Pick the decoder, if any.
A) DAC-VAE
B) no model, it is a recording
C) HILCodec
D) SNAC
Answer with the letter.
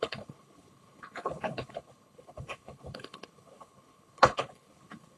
C